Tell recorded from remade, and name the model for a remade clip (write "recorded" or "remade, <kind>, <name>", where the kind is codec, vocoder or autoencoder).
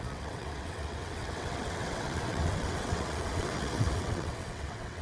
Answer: remade, vocoder, WaveNeXt